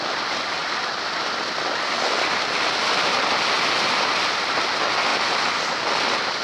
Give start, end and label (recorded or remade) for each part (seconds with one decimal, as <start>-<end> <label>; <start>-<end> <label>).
0.0-6.4 recorded